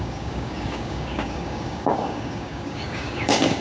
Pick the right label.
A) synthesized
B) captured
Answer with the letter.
A